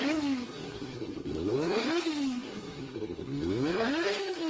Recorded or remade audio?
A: remade